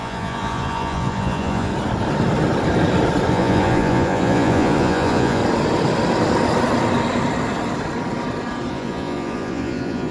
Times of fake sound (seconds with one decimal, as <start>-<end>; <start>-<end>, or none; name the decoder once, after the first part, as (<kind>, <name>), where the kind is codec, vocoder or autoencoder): 0.0-1.7 (vocoder, Vocos); 3.3-5.4; 8.7-10.1